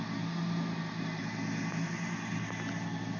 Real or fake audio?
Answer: real